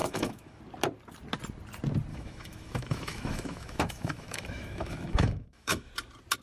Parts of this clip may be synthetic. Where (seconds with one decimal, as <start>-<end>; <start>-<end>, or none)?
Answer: 0.0-0.6; 2.1-5.9